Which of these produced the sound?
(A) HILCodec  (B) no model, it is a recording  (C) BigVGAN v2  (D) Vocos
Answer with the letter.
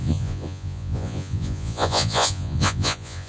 D